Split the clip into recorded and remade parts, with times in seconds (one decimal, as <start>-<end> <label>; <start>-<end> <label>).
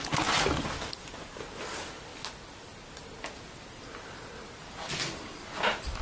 0.0-6.0 recorded